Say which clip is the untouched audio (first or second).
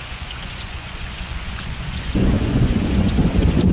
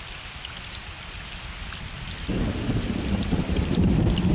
second